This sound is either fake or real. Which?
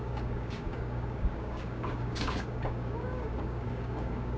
fake